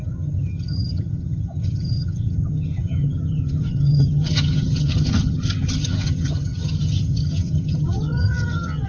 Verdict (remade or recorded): remade